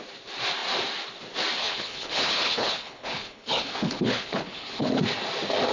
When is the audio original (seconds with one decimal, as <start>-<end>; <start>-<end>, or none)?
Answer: 0.0-1.6; 5.0-5.7